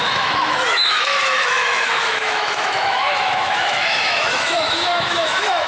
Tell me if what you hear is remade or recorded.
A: remade